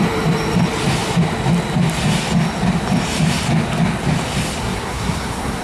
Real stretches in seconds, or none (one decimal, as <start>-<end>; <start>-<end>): 0.0-4.6